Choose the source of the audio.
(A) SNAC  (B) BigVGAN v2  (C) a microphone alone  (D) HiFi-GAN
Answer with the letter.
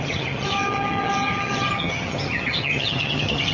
D